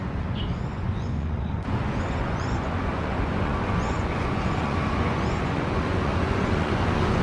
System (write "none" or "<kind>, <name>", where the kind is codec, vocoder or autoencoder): vocoder, Vocos